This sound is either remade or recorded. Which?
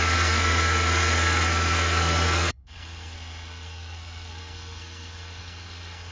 remade